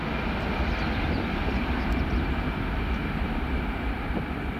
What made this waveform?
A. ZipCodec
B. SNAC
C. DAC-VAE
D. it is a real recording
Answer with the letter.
D